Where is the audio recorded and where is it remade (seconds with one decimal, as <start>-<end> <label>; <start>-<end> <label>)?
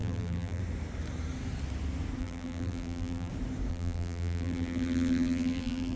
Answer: 0.0-0.6 remade; 0.6-2.2 recorded; 2.2-3.3 remade; 3.3-3.7 recorded; 3.7-6.0 remade